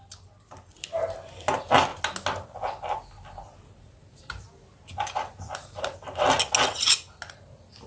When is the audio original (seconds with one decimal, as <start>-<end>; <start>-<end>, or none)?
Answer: 0.0-7.9